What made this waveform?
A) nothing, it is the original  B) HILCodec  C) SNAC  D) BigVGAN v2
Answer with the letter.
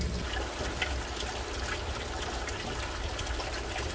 A